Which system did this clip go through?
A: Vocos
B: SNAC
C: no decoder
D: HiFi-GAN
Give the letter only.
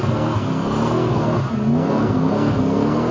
B